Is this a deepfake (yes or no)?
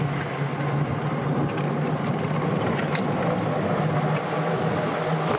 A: no